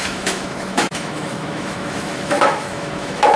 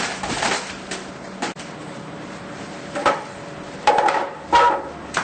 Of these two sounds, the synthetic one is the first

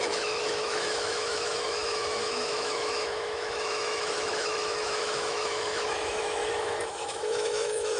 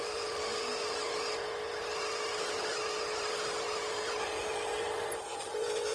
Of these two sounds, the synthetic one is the first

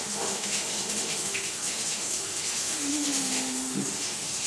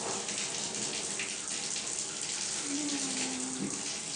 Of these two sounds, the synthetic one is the first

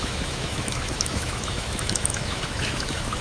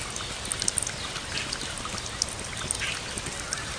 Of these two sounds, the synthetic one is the first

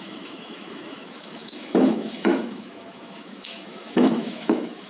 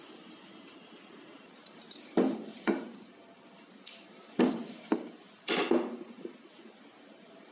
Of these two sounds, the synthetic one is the first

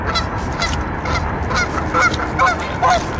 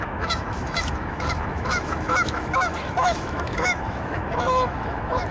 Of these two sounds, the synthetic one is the second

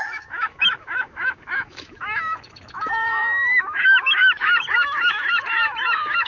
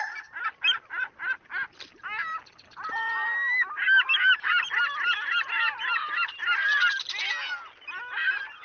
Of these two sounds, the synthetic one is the first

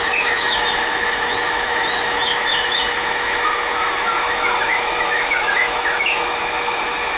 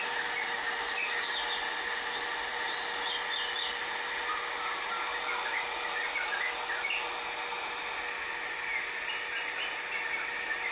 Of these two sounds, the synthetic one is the first